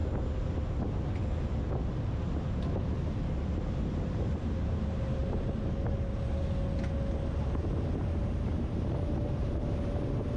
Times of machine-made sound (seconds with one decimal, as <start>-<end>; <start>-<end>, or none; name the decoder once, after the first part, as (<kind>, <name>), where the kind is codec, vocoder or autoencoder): 4.1-5.2 (vocoder, BigVGAN v2); 8.2-10.4